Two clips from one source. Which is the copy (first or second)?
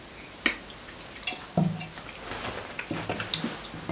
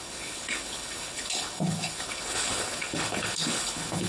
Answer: second